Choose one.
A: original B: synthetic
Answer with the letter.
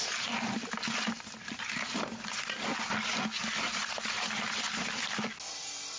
A